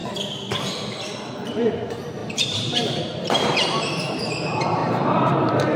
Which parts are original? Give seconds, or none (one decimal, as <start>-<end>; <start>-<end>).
0.0-1.3